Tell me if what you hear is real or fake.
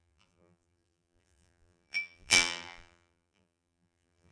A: fake